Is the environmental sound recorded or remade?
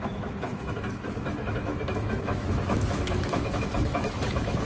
remade